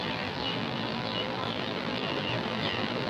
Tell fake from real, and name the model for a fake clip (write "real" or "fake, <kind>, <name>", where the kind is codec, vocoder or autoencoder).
fake, vocoder, BigVGAN v2